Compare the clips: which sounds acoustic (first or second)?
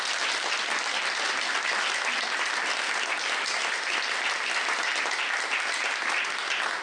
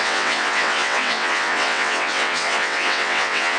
first